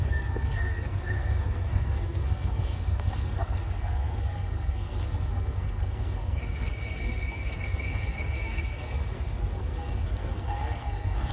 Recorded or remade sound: remade